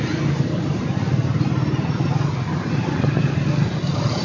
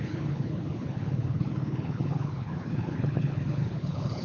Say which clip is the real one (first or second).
first